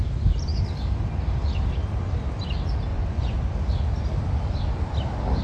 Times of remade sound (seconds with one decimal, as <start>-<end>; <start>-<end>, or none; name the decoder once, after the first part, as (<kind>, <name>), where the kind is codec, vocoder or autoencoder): 2.9-3.4 (vocoder, Vocos)